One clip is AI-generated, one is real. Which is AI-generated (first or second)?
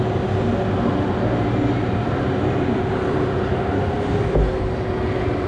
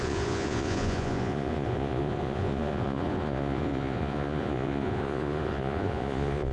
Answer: second